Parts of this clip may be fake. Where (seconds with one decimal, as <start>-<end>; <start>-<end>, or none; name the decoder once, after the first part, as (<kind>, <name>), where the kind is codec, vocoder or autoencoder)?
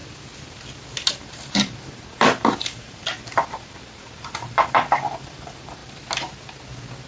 1.1-5.8 (vocoder, BigVGAN v2)